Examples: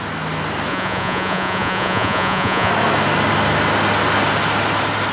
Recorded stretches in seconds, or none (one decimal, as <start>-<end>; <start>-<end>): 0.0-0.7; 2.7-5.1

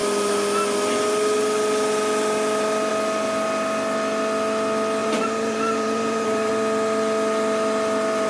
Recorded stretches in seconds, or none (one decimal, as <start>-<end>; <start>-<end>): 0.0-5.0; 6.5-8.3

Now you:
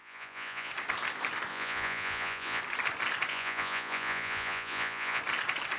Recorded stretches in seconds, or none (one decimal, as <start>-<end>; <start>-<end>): 0.7-1.5; 2.6-3.3; 5.2-5.8

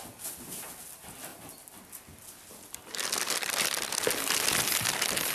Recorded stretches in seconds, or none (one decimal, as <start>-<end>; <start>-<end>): 0.0-5.3

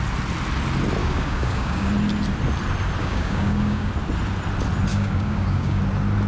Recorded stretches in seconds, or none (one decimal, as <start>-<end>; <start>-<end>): 0.0-1.0; 1.9-3.0; 3.9-4.9; 5.8-6.3

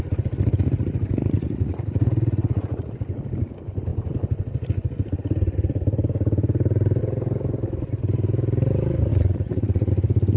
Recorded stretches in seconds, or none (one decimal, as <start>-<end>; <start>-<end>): 0.0-1.4; 2.9-9.1; 9.9-10.4